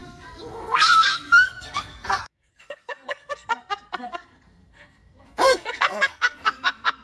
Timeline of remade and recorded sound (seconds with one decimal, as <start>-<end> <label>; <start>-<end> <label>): 0.0-7.0 remade